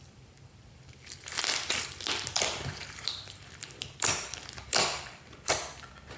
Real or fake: fake